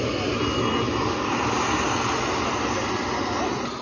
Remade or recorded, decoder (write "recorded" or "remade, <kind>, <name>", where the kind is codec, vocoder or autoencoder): recorded